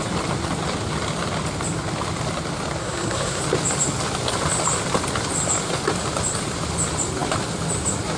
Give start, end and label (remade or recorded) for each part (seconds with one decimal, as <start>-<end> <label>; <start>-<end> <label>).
0.0-2.8 recorded; 2.8-3.4 remade; 3.4-8.2 recorded